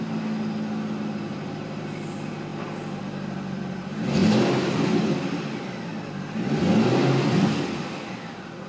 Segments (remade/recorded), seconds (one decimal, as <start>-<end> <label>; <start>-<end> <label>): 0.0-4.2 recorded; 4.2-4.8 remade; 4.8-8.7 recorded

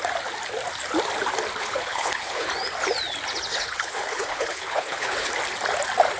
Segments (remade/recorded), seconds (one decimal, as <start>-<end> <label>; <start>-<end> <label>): 0.0-1.6 recorded; 1.6-2.5 remade; 2.5-3.5 recorded; 3.5-5.3 remade; 5.3-6.2 recorded

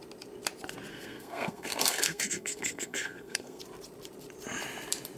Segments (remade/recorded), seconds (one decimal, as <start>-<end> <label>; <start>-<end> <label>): 0.0-0.9 recorded; 0.9-3.6 remade; 3.6-5.2 recorded

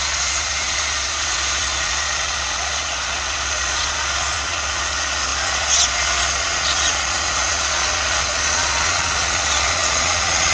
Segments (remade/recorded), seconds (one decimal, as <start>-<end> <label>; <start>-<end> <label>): 0.0-10.5 remade